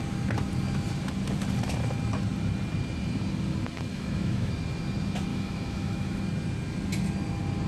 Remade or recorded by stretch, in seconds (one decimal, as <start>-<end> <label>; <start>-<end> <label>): 0.0-3.9 recorded; 3.9-4.5 remade; 4.5-5.3 recorded; 5.3-6.2 remade; 6.2-7.7 recorded